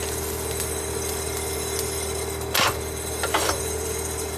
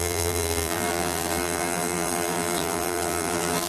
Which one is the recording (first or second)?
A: first